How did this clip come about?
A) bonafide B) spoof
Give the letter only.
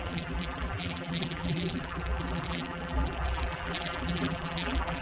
B